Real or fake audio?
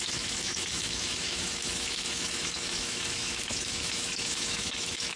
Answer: fake